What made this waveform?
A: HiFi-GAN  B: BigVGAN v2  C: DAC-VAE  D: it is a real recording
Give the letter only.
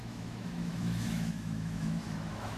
C